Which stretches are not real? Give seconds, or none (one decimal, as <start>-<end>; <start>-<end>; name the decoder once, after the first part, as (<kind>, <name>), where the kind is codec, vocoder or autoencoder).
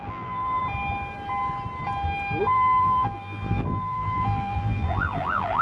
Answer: 0.0-0.6 (vocoder, BigVGAN v2); 2.4-5.6